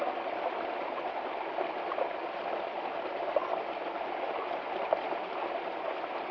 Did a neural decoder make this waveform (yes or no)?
no